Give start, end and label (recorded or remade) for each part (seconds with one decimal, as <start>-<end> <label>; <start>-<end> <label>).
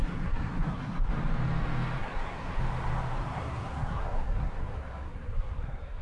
0.0-1.1 remade; 1.1-2.0 recorded; 2.0-2.6 remade; 2.6-3.2 recorded; 3.2-6.0 remade